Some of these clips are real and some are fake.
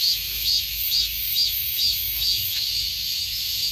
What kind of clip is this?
fake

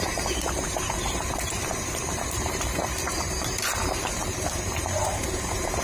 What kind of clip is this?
fake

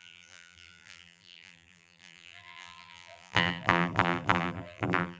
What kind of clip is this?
fake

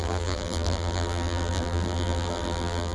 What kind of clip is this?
fake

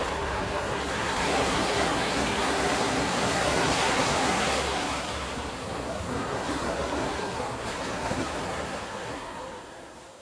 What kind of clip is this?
fake